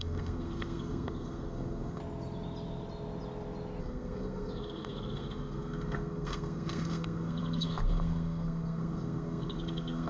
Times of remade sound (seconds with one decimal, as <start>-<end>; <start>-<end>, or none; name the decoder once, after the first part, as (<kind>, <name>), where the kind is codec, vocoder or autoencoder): 0.0-2.0 (codec, SNAC); 3.8-10.1